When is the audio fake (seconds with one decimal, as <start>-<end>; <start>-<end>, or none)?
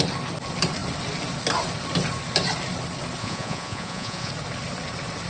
3.2-4.3